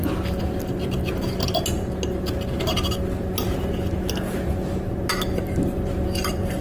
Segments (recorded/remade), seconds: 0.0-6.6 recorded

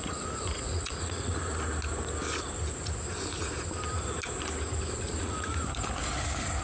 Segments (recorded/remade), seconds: 0.0-1.5 remade; 1.5-5.1 recorded; 5.1-5.5 remade; 5.5-6.6 recorded

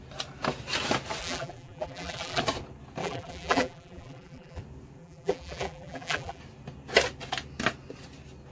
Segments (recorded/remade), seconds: 0.0-1.2 recorded; 1.2-2.4 remade; 2.4-3.0 recorded; 3.0-4.6 remade; 4.6-5.0 recorded; 5.0-6.4 remade; 6.4-8.5 recorded

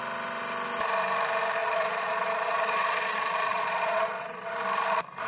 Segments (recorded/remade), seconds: 0.0-1.6 recorded; 1.6-4.5 remade; 4.5-5.3 recorded